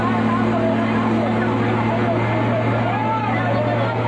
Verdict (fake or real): real